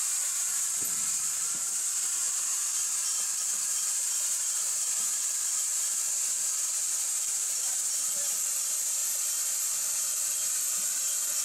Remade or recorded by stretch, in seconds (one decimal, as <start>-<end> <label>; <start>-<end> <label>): 0.0-2.5 remade; 2.5-3.3 recorded; 3.3-11.4 remade